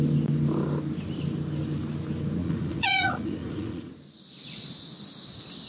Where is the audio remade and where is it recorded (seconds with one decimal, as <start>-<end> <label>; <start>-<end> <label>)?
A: 0.0-2.4 recorded; 2.4-3.9 remade; 3.9-5.7 recorded